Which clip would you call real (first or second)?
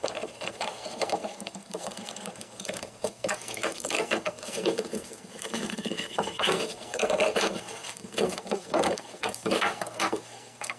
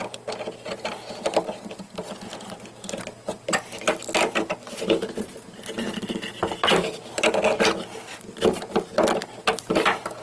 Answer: second